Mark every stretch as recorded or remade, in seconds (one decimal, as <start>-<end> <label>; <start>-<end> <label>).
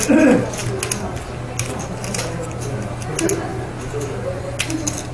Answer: 0.0-5.1 recorded